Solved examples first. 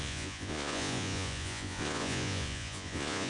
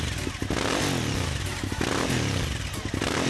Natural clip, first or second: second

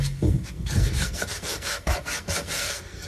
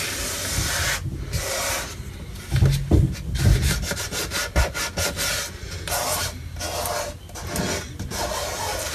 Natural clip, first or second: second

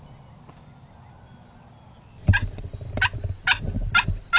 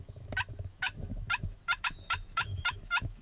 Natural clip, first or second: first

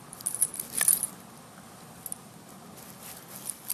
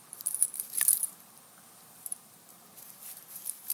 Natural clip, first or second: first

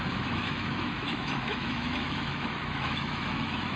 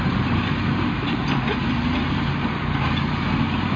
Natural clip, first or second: second